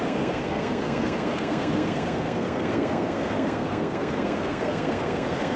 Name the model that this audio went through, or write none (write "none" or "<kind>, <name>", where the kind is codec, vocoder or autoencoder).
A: codec, SNAC